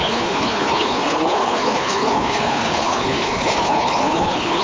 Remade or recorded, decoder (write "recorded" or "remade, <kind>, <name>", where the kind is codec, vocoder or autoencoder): remade, codec, HILCodec